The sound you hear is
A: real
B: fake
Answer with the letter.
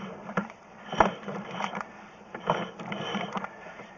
B